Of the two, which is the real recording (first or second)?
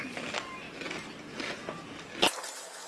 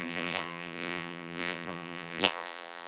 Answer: first